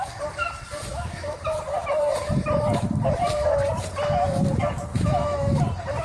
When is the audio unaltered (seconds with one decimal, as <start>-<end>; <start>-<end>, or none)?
0.0-0.9; 1.4-4.9; 5.6-6.0